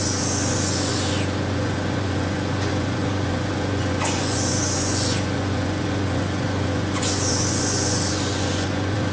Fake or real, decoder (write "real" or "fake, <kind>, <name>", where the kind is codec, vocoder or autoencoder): fake, vocoder, Vocos